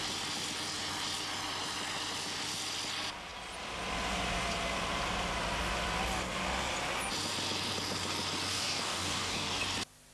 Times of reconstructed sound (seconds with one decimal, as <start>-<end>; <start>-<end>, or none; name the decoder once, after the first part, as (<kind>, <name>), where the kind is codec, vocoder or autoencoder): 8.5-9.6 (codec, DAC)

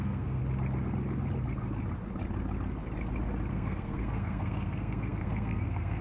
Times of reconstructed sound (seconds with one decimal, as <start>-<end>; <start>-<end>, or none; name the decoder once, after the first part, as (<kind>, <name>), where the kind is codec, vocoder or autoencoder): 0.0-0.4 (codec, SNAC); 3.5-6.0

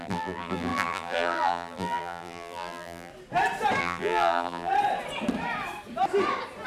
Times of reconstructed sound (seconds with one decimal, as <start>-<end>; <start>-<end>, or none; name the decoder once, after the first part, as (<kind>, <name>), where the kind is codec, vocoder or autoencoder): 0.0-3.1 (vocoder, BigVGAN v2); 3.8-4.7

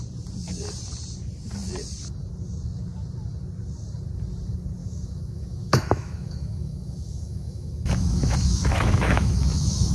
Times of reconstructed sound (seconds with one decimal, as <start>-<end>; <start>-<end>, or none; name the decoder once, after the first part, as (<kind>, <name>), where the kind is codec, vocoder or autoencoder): 4.8-9.9 (autoencoder, DAC-VAE)

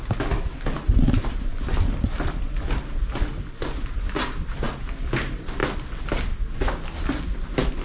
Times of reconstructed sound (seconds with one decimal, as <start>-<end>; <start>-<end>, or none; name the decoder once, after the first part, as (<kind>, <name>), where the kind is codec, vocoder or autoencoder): none

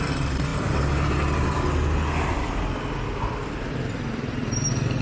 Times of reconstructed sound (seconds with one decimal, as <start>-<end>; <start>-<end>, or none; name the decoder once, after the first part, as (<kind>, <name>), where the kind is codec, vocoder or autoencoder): 0.0-0.5 (vocoder, BigVGAN v2); 3.5-5.0

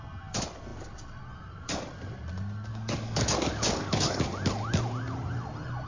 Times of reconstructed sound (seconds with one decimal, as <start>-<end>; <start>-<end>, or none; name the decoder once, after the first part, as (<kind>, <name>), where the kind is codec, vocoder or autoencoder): 2.7-4.3 (codec, DAC)